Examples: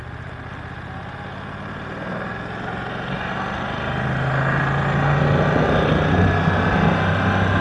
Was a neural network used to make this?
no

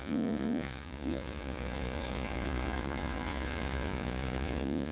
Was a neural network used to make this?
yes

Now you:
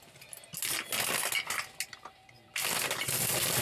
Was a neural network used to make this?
no